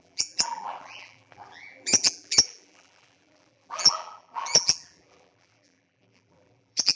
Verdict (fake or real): fake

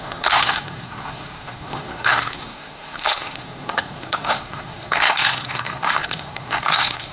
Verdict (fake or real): fake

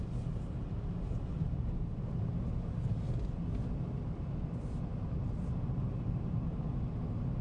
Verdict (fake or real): real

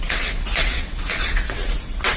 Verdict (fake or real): fake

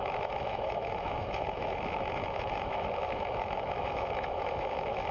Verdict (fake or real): fake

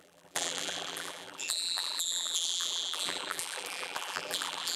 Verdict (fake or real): fake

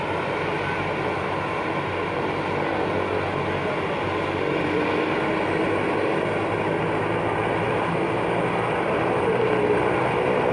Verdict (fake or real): real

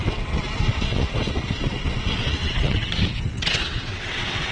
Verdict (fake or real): fake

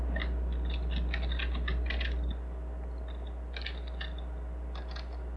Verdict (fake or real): real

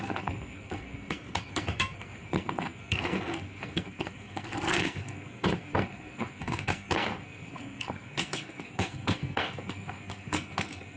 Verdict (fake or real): fake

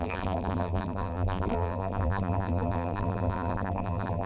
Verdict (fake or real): fake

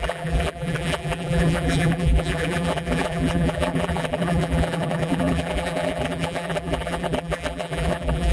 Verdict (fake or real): fake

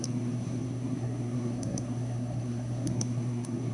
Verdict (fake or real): fake